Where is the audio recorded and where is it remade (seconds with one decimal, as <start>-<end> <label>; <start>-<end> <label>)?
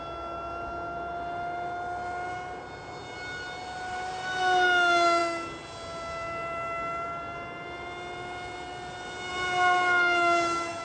0.0-10.8 recorded